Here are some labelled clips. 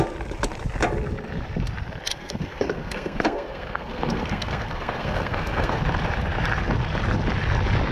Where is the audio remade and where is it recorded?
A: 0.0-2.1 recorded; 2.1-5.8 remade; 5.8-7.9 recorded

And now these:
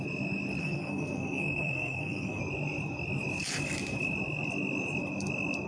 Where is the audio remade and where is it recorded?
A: 0.0-0.6 recorded; 0.6-2.4 remade; 2.4-5.7 recorded